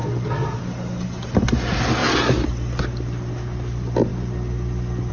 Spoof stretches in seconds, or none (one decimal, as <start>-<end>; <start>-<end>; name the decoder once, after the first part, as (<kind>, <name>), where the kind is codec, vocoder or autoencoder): none